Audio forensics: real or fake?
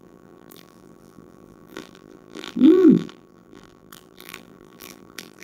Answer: fake